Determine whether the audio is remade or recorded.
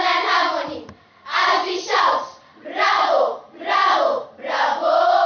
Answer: recorded